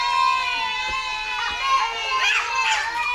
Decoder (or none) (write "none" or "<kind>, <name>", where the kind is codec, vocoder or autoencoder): none